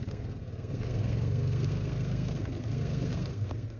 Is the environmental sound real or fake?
fake